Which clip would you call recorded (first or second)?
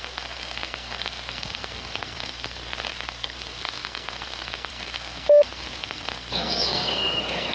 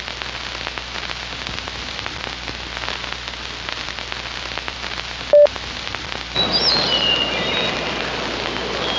second